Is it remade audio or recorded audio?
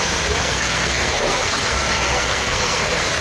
remade